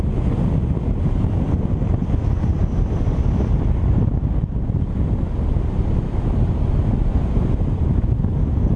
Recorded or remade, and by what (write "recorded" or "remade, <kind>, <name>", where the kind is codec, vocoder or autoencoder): recorded